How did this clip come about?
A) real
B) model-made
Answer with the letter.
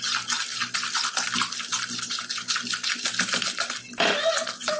A